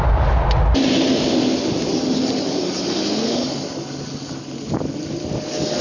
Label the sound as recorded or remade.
recorded